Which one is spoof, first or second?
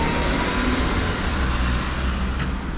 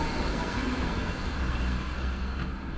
second